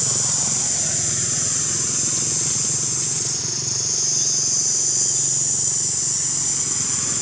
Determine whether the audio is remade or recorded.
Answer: recorded